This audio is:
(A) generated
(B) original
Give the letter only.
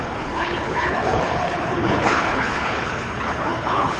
A